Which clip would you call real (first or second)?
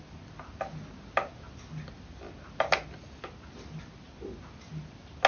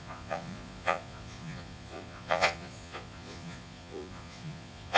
first